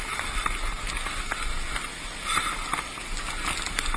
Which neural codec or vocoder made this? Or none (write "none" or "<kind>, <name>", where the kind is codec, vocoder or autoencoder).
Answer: none